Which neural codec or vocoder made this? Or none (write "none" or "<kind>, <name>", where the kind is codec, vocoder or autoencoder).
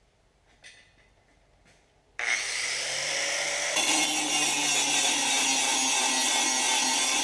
none